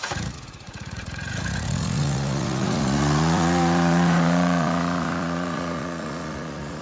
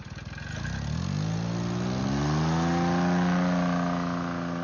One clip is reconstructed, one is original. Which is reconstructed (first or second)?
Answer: first